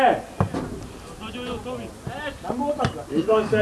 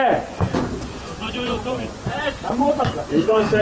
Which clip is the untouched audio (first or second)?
first